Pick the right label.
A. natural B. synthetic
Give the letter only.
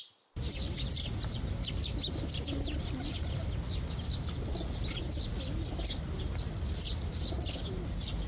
A